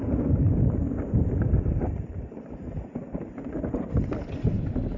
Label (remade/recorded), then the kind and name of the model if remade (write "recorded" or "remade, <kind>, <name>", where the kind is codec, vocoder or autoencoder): recorded